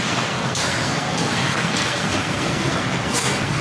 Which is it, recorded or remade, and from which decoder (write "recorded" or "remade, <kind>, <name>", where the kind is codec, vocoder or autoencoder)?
remade, codec, SNAC